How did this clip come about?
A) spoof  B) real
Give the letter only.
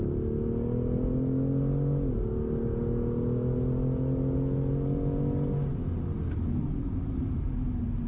B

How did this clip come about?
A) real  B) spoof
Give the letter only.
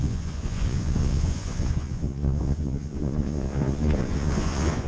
B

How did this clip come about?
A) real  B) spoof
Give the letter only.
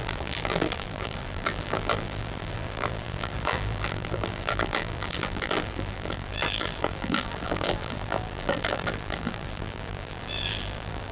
B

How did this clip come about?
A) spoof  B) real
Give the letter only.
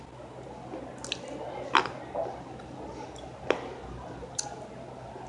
B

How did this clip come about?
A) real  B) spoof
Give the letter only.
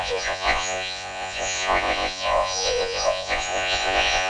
B